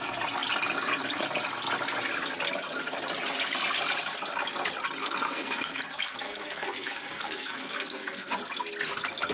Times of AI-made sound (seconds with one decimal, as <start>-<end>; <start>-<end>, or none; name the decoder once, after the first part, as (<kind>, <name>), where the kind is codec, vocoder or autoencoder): 5.0-8.4 (codec, SNAC)